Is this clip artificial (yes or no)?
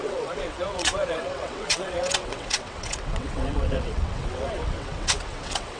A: yes